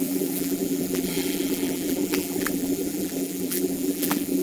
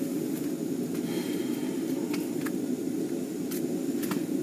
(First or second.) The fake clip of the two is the first